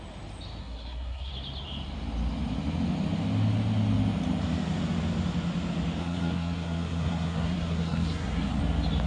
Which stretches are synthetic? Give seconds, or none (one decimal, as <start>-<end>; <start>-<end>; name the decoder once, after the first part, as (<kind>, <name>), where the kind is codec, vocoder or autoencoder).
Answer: 0.6-1.3 (codec, SNAC); 6.0-8.6